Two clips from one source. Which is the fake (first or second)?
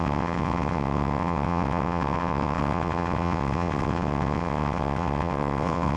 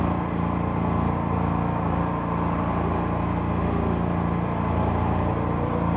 first